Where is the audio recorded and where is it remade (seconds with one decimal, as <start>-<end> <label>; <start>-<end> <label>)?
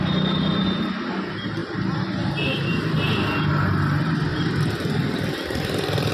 0.0-4.3 recorded; 4.3-5.4 remade; 5.4-6.1 recorded